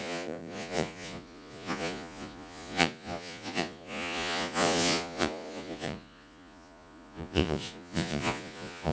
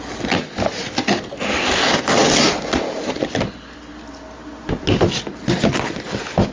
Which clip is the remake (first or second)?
first